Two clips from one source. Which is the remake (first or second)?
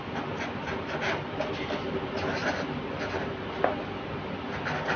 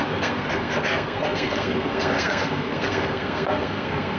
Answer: second